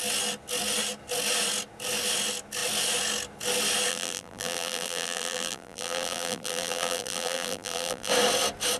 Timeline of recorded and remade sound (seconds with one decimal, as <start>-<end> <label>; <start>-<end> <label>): 0.0-3.9 recorded; 3.9-8.1 remade; 8.1-8.8 recorded